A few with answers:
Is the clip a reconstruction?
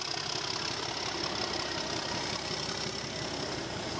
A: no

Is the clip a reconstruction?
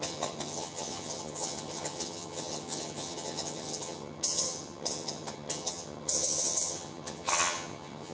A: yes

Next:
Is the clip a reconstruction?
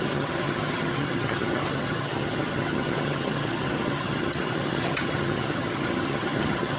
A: yes